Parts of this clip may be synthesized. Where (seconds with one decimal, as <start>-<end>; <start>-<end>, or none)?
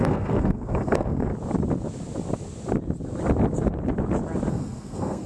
0.0-1.3; 4.5-5.3